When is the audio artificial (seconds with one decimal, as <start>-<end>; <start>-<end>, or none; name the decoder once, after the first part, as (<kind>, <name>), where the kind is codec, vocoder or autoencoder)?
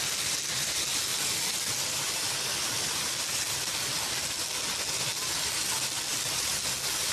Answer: 6.1-6.6 (vocoder, BigVGAN v2)